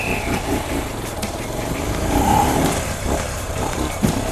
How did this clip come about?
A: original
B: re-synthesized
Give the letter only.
B